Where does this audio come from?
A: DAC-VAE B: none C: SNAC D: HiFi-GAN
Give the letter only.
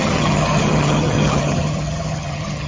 D